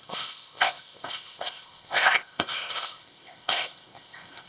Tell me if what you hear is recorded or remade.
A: remade